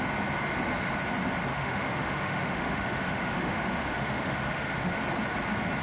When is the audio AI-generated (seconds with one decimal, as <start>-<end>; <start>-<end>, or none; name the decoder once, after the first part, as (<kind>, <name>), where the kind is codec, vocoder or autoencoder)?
1.5-5.0 (autoencoder, DAC-VAE)